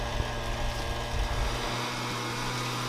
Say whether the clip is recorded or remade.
recorded